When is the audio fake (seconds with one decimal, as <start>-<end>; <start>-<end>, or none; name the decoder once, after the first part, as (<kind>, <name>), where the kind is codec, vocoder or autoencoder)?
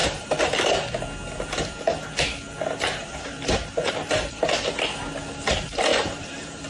0.0-0.7 (vocoder, BigVGAN v2); 3.0-3.9; 5.9-6.7